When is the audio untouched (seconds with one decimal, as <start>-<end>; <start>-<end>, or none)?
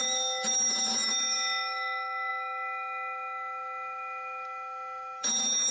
none